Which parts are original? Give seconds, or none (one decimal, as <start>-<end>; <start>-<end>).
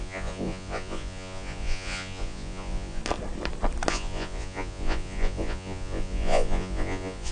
3.0-3.9